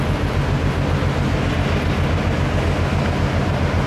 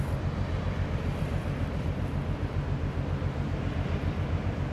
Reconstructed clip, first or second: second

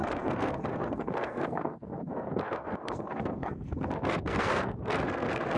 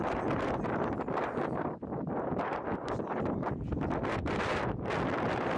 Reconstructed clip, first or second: first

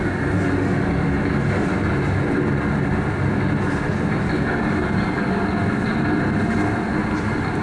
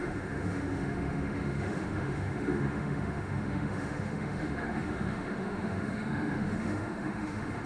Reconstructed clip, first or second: second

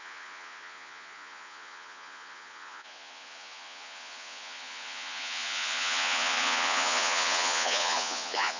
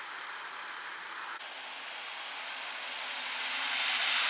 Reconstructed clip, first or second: first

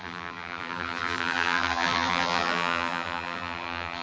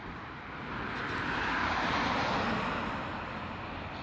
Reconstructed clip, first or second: first